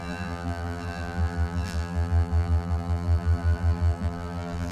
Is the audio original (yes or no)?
no